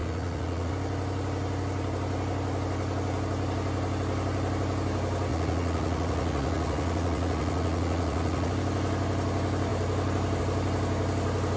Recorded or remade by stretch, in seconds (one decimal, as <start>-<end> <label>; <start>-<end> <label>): 0.0-0.7 remade; 0.7-5.3 recorded; 5.3-8.5 remade; 8.5-11.6 recorded